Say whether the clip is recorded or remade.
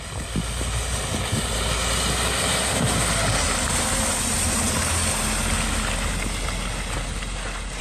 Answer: recorded